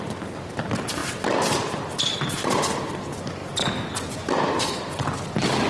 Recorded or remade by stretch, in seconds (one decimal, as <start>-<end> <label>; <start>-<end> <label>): 0.0-5.7 recorded